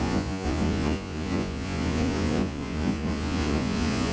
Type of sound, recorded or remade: remade